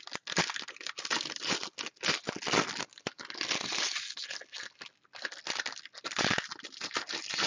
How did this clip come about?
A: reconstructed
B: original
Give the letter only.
B